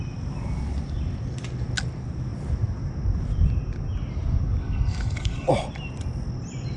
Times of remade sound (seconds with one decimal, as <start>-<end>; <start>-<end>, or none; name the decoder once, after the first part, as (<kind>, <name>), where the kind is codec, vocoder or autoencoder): 4.6-5.5 (codec, SNAC)